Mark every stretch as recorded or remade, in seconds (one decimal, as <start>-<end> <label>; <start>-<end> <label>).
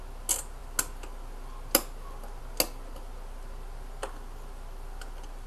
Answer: 0.0-5.5 recorded